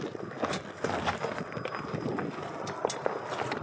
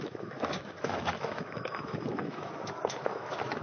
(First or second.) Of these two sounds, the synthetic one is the second